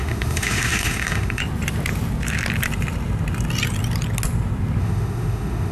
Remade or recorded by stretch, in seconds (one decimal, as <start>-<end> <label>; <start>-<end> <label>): 0.0-1.4 remade; 1.4-4.8 recorded; 4.8-5.7 remade